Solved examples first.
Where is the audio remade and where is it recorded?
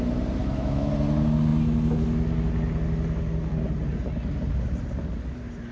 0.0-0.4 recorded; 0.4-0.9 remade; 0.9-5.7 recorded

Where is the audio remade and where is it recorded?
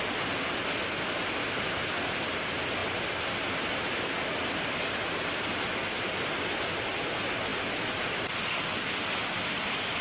0.0-10.0 recorded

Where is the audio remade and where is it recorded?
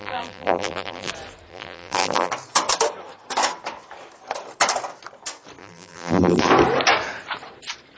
0.0-1.1 remade; 1.1-1.5 recorded; 1.5-2.3 remade; 2.3-5.6 recorded; 5.6-6.5 remade; 6.5-8.0 recorded